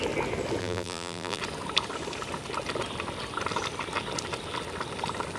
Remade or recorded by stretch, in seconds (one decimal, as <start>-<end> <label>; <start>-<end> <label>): 0.0-0.6 recorded; 0.6-1.4 remade; 1.4-5.4 recorded